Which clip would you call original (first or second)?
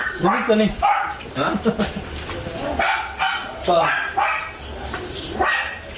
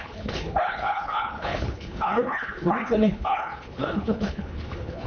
first